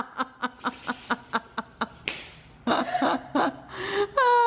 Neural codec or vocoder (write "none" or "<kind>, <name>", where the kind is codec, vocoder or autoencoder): none